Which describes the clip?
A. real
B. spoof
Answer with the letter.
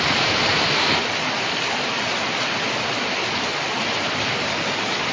B